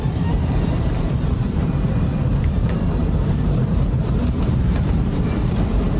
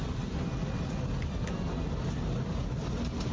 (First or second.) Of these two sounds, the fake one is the first